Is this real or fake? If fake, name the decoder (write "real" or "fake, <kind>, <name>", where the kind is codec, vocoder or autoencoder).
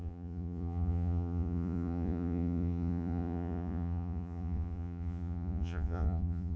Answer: fake, vocoder, Vocos